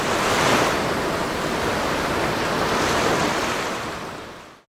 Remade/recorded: recorded